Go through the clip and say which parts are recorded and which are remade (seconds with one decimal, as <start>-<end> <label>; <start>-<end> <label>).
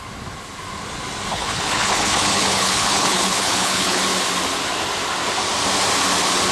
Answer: 0.0-1.3 recorded; 1.3-4.0 remade; 4.0-6.5 recorded